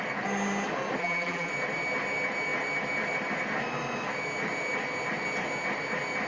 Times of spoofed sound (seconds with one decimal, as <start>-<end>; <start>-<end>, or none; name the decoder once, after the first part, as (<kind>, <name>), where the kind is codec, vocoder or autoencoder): 1.0-1.5 (vocoder, BigVGAN v2)